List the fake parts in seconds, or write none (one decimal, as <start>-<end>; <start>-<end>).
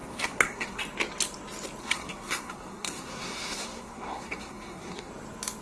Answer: 0.0-0.8; 1.8-5.1